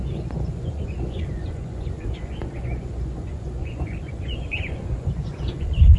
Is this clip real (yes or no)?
no